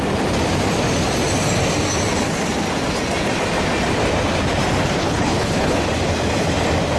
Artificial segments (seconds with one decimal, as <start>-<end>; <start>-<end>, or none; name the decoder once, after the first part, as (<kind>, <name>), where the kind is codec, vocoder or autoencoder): 5.0-5.8 (codec, HILCodec)